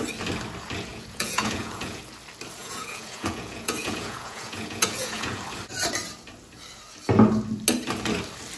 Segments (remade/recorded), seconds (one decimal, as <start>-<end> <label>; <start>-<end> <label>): 0.0-0.9 recorded; 0.9-2.0 remade; 2.0-2.6 recorded; 2.6-5.4 remade; 5.4-8.6 recorded

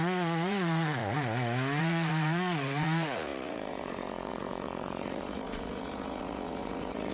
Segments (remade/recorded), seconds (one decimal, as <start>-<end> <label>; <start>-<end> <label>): 0.0-1.0 remade; 1.0-1.8 recorded; 1.8-7.1 remade